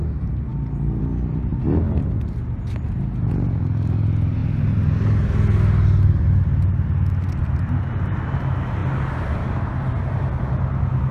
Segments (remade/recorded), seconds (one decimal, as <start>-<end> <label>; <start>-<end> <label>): 0.0-11.1 recorded